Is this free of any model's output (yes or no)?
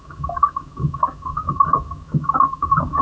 no